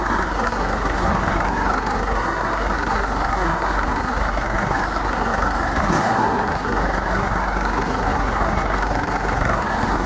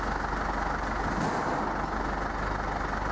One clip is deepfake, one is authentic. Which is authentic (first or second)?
second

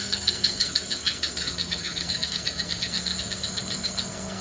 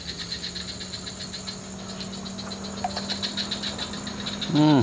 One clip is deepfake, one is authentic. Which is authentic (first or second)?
second